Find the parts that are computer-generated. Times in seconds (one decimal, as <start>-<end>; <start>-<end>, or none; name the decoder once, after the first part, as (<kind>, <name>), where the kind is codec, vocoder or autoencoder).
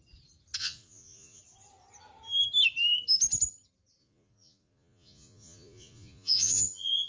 0.6-1.4 (vocoder, Vocos); 4.0-7.1